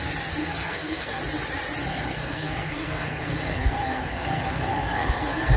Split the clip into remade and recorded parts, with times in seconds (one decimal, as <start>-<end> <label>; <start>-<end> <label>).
0.0-0.4 recorded; 0.4-1.2 remade; 1.2-1.9 recorded; 1.9-5.6 remade